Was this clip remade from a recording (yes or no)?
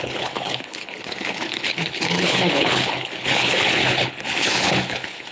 yes